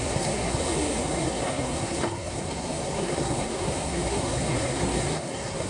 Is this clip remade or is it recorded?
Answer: remade